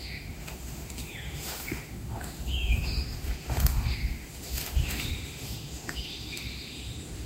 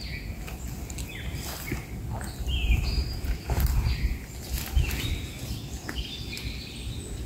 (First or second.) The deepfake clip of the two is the first